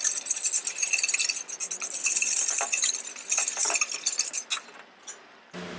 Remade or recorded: recorded